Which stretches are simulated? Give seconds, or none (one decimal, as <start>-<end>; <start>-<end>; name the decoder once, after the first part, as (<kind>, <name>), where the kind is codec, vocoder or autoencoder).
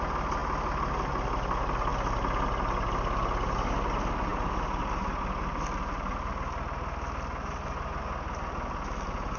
none